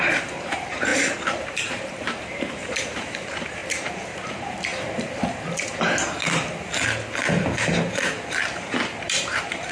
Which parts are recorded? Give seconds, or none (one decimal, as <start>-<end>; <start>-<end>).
4.7-7.5